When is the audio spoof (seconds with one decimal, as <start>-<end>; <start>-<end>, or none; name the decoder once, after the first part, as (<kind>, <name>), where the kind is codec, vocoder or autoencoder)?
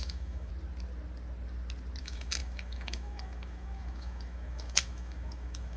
0.0-0.5 (autoencoder, DAC-VAE); 2.0-5.8